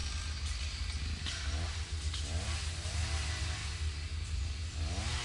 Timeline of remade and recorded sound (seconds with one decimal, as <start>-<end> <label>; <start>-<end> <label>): 0.0-5.2 recorded

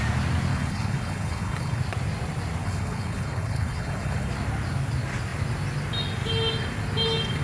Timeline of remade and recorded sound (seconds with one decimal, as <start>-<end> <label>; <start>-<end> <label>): 0.0-0.5 recorded; 0.5-1.8 remade; 1.8-2.6 recorded; 2.6-4.3 remade; 4.3-7.4 recorded

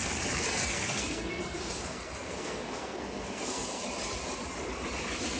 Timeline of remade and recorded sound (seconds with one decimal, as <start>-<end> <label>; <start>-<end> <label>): 0.0-3.8 remade; 3.8-5.4 recorded

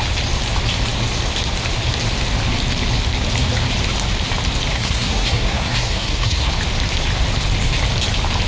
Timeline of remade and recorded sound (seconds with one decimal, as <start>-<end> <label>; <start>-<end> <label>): 0.0-4.7 recorded; 4.7-6.5 remade; 6.5-8.5 recorded

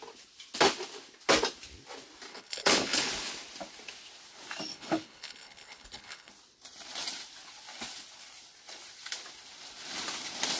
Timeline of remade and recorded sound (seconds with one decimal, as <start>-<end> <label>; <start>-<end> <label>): 0.0-2.3 recorded; 2.3-3.1 remade; 3.1-4.7 recorded; 4.7-6.3 remade; 6.3-10.6 recorded